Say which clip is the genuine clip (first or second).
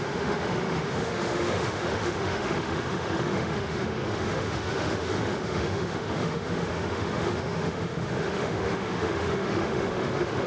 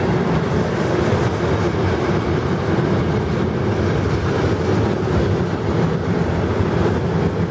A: second